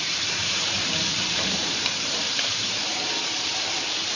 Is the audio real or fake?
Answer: fake